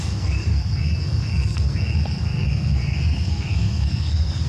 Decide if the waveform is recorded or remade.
remade